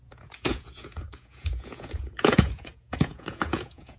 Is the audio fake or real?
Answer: fake